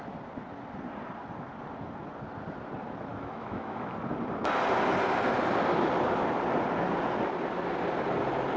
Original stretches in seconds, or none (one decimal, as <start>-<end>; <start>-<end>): 0.0-3.1; 3.9-8.6